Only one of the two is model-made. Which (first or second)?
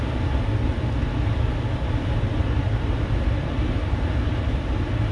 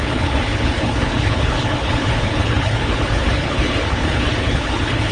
second